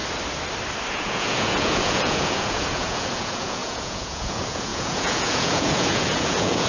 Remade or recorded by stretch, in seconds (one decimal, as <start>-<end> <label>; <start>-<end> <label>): 0.0-0.9 recorded; 0.9-6.7 remade